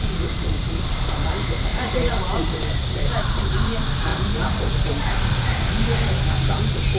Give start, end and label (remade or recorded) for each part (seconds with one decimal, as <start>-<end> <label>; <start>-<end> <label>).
0.0-1.7 recorded; 1.7-3.5 remade; 3.5-4.1 recorded; 4.1-5.1 remade; 5.1-7.0 recorded